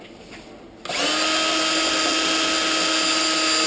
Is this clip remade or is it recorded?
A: recorded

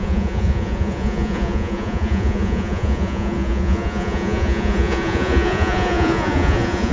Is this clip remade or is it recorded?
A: remade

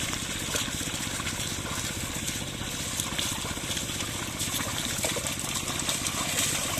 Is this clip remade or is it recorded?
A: recorded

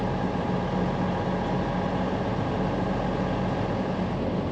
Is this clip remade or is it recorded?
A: recorded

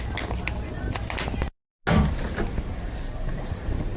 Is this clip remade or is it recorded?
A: recorded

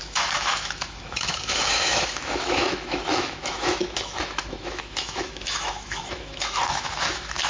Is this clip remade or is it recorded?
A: remade